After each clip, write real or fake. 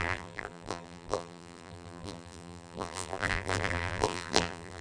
fake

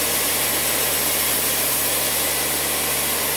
real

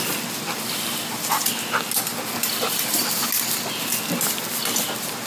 real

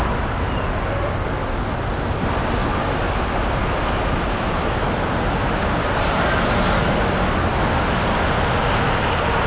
real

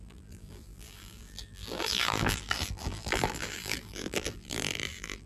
fake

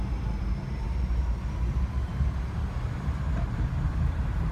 fake